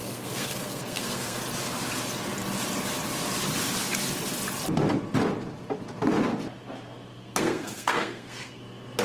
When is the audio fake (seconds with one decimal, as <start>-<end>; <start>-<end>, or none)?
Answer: 0.0-1.4; 7.2-8.6

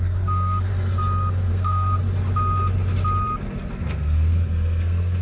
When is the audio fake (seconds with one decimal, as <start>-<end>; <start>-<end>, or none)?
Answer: 0.0-0.7; 1.5-2.0; 3.8-5.2

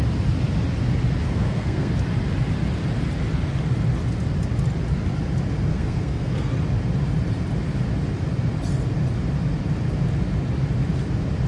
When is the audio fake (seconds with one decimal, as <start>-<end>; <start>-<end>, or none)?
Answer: 1.2-1.9; 5.7-6.5

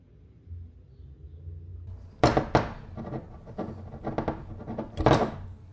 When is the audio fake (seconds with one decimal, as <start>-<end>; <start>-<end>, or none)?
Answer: none

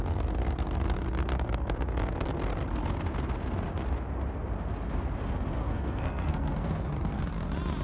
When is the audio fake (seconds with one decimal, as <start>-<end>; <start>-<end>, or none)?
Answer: 5.6-7.2

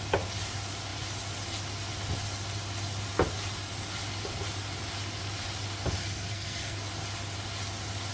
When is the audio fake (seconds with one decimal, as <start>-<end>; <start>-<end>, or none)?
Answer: 6.0-6.8